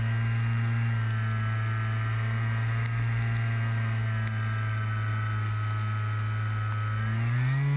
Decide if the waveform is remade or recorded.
recorded